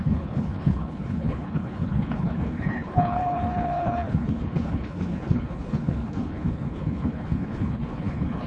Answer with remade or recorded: remade